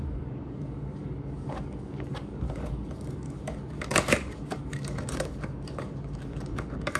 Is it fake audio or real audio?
fake